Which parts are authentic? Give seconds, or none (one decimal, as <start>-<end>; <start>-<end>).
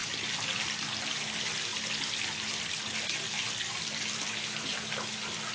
0.0-5.5